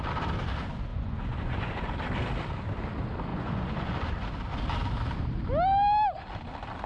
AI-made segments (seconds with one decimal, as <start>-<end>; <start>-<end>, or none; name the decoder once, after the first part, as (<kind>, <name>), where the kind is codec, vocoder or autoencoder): 0.9-1.8 (vocoder, Vocos); 3.3-3.9